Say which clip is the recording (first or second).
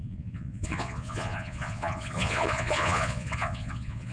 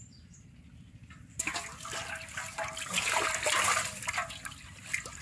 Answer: second